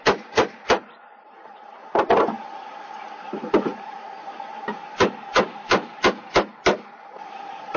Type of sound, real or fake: real